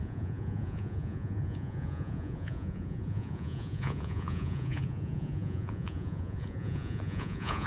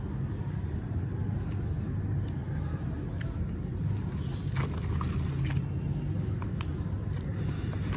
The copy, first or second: first